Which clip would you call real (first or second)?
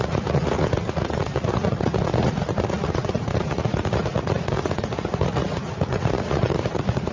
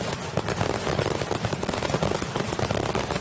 second